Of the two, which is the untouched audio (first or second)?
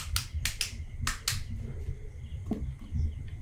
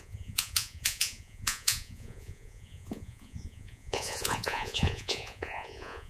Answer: first